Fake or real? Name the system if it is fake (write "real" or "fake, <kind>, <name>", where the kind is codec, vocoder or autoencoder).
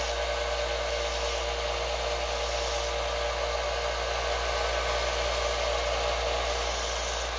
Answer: real